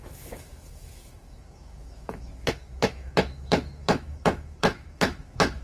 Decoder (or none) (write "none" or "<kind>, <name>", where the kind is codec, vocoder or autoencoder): autoencoder, DAC-VAE